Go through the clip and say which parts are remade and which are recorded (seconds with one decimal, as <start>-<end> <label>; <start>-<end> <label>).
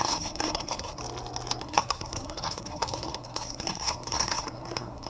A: 0.0-1.0 remade; 1.0-1.6 recorded; 1.6-5.1 remade